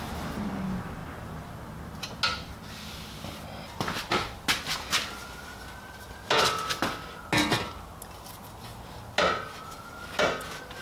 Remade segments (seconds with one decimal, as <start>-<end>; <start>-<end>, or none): none